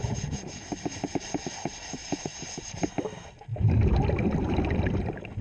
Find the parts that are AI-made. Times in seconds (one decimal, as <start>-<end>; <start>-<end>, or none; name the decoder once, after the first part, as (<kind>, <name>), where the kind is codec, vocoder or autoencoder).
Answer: 2.0-2.9 (vocoder, BigVGAN v2)